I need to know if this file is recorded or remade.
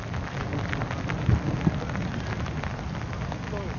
recorded